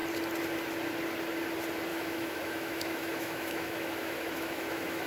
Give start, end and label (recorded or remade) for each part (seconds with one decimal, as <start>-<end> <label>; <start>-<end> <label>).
0.0-1.9 recorded; 1.9-5.1 remade